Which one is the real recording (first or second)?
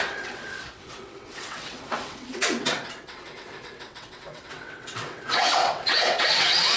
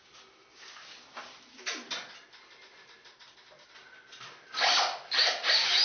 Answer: second